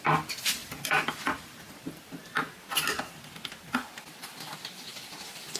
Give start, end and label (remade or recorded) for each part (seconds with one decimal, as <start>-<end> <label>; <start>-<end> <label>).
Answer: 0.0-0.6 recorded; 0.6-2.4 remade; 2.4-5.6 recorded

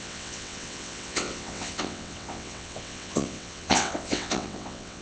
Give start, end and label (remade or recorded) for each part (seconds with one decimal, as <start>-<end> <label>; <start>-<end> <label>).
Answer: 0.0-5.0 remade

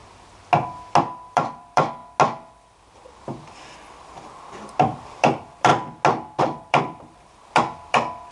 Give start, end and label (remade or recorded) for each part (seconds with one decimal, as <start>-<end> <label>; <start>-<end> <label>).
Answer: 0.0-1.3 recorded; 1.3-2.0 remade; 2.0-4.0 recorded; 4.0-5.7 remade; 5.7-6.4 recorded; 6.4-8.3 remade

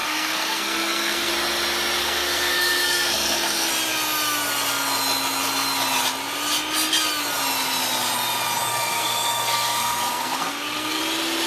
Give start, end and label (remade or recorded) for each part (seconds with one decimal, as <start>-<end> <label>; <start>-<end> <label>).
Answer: 0.0-1.3 remade; 1.3-2.0 recorded; 2.0-3.7 remade; 3.7-8.7 recorded; 8.7-11.0 remade; 11.0-11.5 recorded

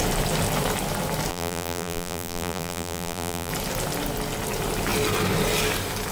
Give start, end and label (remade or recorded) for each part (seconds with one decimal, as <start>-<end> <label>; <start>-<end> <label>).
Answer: 0.0-1.3 recorded; 1.3-3.5 remade; 3.5-6.1 recorded

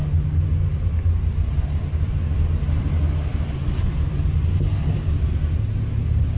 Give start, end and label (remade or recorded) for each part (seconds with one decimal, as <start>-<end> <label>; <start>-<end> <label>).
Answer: 0.0-3.3 recorded; 3.3-4.2 remade; 4.2-6.4 recorded

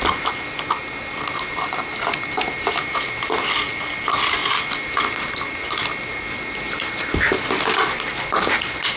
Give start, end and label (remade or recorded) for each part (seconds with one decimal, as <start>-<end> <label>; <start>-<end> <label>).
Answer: 0.0-1.5 recorded; 1.5-2.1 remade; 2.1-9.0 recorded